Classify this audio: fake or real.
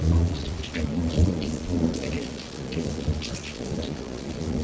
fake